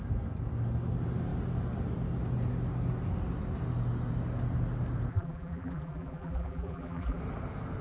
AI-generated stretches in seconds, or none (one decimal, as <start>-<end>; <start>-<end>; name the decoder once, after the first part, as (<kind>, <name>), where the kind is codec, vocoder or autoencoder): 5.1-7.2 (vocoder, BigVGAN v2)